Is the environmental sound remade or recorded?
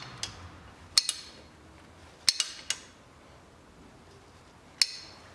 recorded